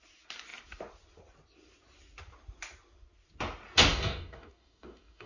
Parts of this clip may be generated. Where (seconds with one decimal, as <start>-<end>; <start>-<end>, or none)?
3.9-5.3